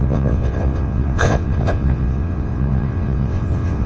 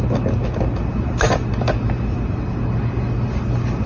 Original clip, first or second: second